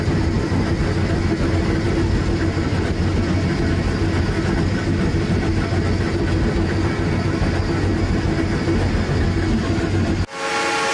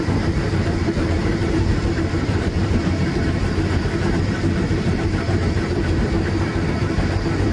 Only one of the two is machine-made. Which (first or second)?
second